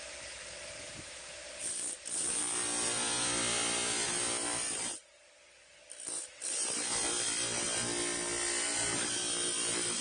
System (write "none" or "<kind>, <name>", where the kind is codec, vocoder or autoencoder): none